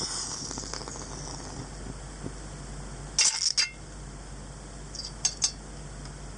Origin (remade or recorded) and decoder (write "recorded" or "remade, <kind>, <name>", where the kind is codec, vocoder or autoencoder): recorded